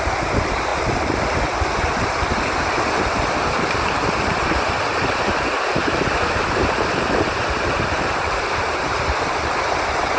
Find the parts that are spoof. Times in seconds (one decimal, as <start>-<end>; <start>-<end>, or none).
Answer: 0.0-0.7; 5.1-10.2